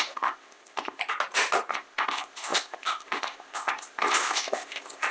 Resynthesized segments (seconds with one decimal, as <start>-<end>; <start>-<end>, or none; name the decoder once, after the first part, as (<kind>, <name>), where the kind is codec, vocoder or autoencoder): 0.0-1.0 (codec, ZipCodec); 1.7-5.1